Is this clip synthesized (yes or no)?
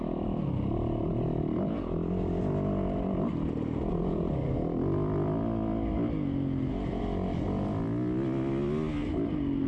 no